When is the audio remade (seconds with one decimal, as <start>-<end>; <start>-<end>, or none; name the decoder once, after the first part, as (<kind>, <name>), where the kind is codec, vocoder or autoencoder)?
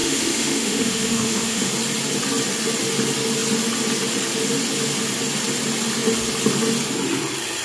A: 0.0-1.7 (autoencoder, DAC-VAE)